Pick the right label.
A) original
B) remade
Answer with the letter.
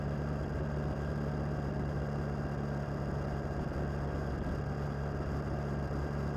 A